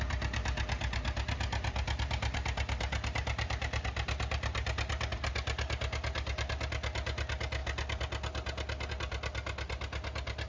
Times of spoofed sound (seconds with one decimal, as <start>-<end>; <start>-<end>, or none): none